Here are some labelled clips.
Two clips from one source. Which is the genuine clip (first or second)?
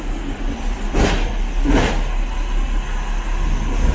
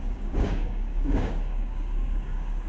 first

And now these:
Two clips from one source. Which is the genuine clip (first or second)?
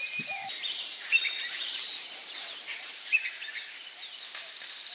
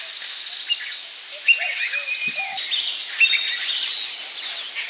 second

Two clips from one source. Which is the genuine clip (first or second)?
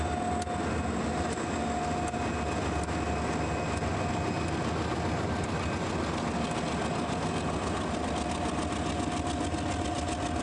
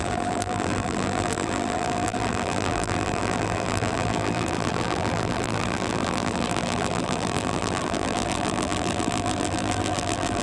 first